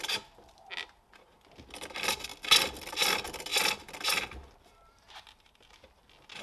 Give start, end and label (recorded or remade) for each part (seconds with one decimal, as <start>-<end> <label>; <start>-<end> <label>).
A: 0.0-6.4 recorded